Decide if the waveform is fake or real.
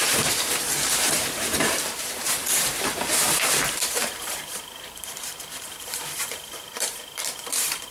fake